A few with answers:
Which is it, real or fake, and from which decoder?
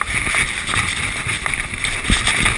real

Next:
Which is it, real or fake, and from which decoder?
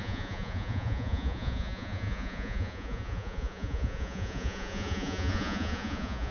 fake, vocoder, Vocos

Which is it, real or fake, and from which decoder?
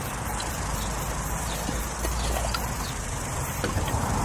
real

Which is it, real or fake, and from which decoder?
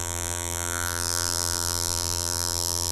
fake, vocoder, BigVGAN v2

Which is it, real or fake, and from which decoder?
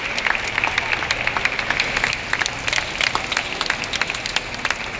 real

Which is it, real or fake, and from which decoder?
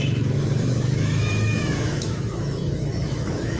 fake, autoencoder, DAC-VAE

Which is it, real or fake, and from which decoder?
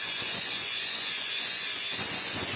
fake, vocoder, Vocos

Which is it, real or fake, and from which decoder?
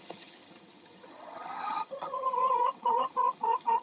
fake, vocoder, HiFi-GAN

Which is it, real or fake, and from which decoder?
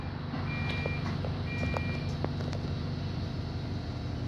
real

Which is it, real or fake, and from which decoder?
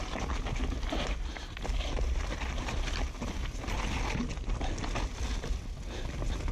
real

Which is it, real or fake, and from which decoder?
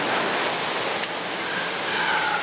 real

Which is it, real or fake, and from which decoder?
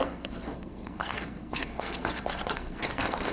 fake, codec, SNAC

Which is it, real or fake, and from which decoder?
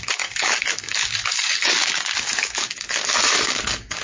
fake, codec, DAC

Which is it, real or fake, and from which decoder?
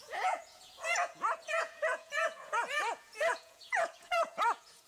fake, vocoder, Vocos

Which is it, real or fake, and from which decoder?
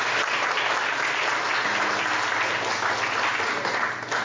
real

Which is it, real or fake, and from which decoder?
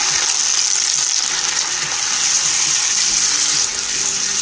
real